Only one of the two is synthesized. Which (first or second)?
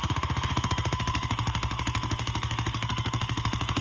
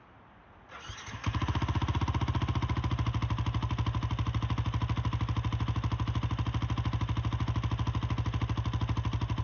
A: first